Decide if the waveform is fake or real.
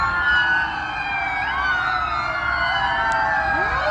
real